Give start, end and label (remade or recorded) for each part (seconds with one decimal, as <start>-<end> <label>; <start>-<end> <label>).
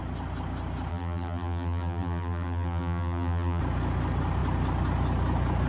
0.0-0.9 recorded; 0.9-3.6 remade; 3.6-5.7 recorded